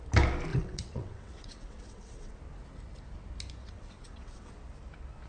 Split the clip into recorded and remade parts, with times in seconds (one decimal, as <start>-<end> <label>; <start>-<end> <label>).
0.0-0.5 recorded; 0.5-2.4 remade; 2.4-3.6 recorded; 3.6-4.5 remade; 4.5-5.3 recorded